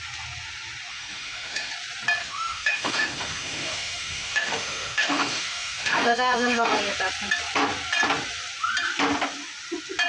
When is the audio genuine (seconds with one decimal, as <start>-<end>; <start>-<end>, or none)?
0.0-0.9; 1.7-2.2; 6.8-10.1